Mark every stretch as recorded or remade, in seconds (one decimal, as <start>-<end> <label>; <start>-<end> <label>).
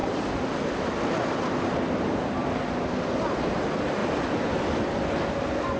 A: 0.0-5.8 recorded